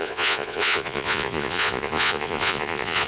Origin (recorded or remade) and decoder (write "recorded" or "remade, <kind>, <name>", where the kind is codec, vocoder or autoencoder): remade, vocoder, Vocos